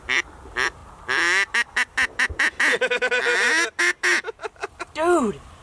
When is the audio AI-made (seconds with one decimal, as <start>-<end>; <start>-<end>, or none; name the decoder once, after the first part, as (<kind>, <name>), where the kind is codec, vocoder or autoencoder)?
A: 4.1-4.7 (vocoder, BigVGAN v2)